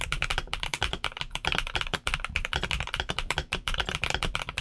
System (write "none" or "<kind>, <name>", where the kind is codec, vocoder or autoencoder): vocoder, BigVGAN v2